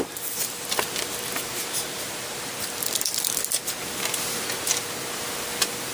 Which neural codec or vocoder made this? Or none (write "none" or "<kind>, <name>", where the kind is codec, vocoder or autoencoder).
none